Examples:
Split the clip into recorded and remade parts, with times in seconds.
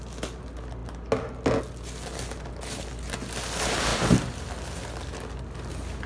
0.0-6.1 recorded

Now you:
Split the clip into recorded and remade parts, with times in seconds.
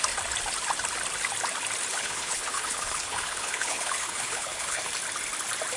0.0-1.9 recorded; 1.9-4.9 remade; 4.9-5.8 recorded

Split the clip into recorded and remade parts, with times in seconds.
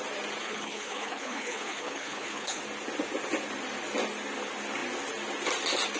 0.0-0.4 recorded; 0.4-2.6 remade; 2.6-6.0 recorded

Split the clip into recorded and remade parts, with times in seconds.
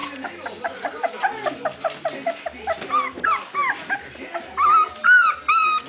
0.0-5.9 recorded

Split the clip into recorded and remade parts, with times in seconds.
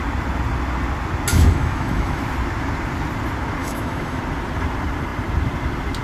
0.0-1.3 recorded; 1.3-2.2 remade; 2.2-3.6 recorded; 3.6-4.2 remade; 4.2-6.0 recorded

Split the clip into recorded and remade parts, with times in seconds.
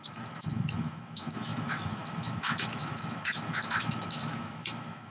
0.0-5.1 remade